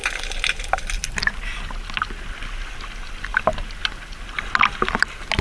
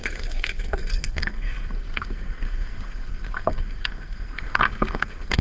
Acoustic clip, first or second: first